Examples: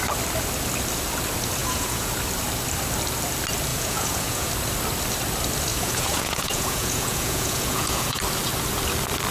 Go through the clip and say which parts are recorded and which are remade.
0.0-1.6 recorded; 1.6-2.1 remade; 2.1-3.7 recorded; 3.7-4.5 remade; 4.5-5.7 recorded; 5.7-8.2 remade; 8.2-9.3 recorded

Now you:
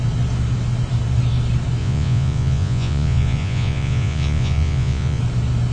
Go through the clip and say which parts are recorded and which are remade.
0.0-1.8 recorded; 1.8-5.2 remade; 5.2-5.7 recorded

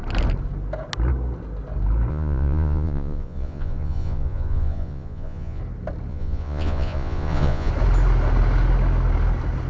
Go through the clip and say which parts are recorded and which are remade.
0.0-2.1 recorded; 2.1-5.6 remade; 5.6-6.1 recorded; 6.1-7.7 remade; 7.7-9.7 recorded